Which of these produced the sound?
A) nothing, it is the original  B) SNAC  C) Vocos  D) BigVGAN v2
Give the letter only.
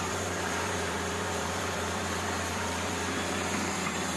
D